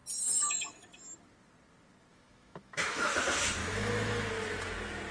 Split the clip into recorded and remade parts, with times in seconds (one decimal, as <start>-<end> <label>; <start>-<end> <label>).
0.0-2.1 recorded; 2.1-3.1 remade; 3.1-3.6 recorded; 3.6-4.3 remade; 4.3-5.1 recorded